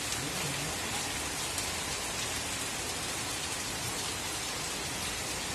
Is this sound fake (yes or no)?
no